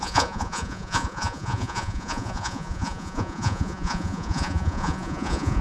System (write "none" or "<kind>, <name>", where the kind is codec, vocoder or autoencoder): vocoder, Vocos